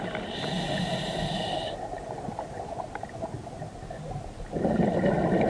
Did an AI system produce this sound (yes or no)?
no